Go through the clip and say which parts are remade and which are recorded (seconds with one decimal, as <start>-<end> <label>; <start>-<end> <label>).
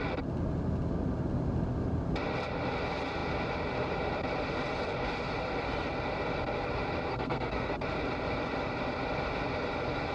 0.0-7.1 recorded; 7.1-7.7 remade; 7.7-10.1 recorded